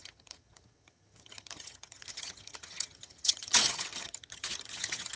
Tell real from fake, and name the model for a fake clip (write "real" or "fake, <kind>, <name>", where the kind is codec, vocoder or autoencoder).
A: fake, vocoder, HiFi-GAN